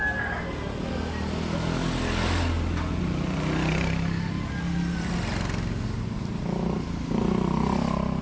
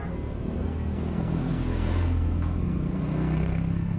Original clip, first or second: first